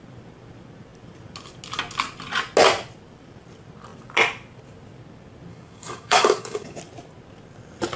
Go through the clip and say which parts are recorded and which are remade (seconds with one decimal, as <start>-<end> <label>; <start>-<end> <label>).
0.0-5.5 recorded; 5.5-6.8 remade; 6.8-8.0 recorded